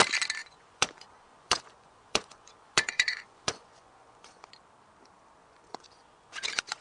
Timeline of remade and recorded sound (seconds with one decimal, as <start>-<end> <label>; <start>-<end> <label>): 0.0-0.4 recorded; 0.4-4.5 remade; 4.5-5.4 recorded; 5.4-6.8 remade